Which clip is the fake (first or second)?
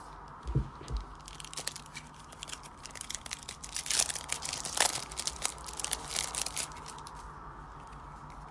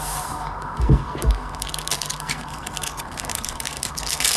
second